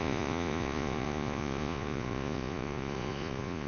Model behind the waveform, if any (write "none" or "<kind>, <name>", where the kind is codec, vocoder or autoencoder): vocoder, Vocos